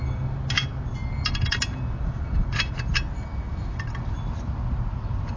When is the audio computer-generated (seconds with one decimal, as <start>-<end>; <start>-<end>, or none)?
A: none